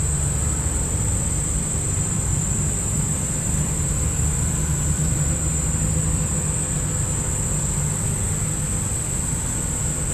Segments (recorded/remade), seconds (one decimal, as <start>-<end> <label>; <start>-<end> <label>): 0.0-0.4 recorded; 0.4-5.4 remade; 5.4-10.1 recorded